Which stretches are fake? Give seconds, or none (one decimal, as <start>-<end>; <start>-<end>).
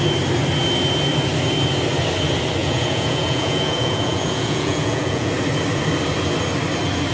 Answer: 2.6-5.3